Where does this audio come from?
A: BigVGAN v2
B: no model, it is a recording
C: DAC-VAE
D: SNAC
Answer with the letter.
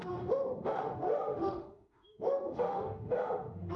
C